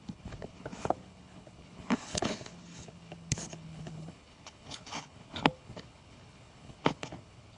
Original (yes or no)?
no